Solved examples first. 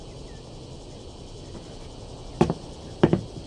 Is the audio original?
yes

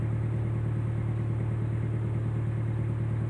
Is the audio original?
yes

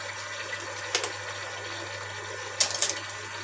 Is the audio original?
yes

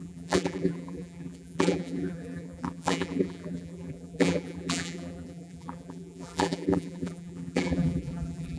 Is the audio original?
no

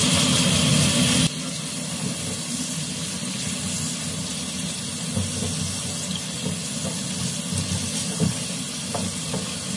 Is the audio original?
yes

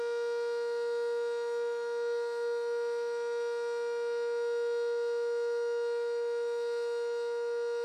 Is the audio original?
yes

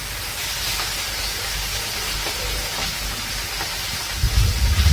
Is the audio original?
yes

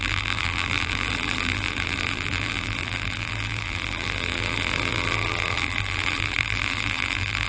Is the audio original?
no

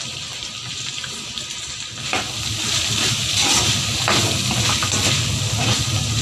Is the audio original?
yes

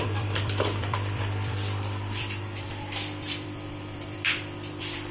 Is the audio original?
no